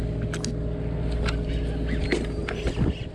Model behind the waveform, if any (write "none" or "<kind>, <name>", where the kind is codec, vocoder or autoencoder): none